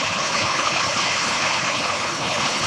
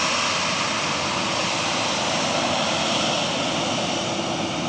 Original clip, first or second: second